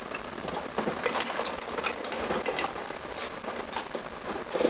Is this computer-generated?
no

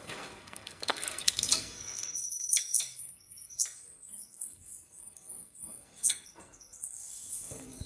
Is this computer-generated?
yes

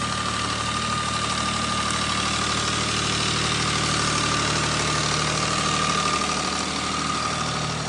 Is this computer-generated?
no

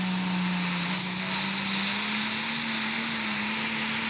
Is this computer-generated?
no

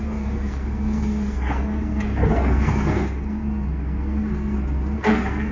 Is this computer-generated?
yes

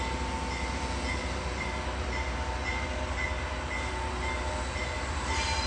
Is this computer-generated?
no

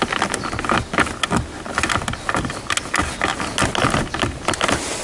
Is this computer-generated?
no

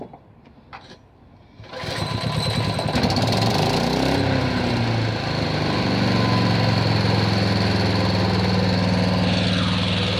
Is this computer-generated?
no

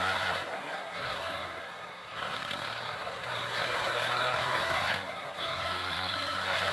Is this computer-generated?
yes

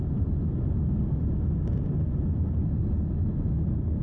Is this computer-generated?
no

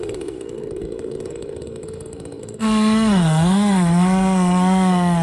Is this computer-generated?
yes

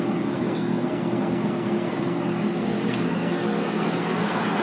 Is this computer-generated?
yes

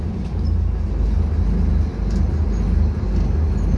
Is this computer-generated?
no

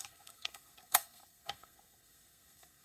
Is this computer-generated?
yes